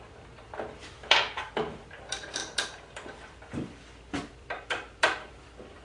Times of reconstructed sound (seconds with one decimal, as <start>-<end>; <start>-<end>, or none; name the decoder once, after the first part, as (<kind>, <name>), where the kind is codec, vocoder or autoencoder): 0.0-5.8 (vocoder, BigVGAN v2)

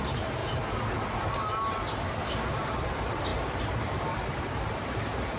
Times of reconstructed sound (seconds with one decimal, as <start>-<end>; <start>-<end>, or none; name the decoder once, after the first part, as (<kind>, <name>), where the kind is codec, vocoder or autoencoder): 0.0-0.4 (vocoder, BigVGAN v2); 2.5-5.4